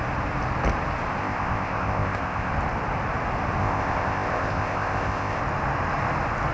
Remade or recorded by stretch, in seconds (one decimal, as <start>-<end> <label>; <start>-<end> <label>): 0.0-1.2 recorded; 1.2-2.5 remade; 2.5-3.6 recorded; 3.6-5.4 remade; 5.4-6.5 recorded